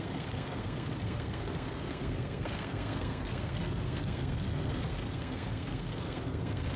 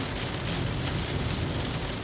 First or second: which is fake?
first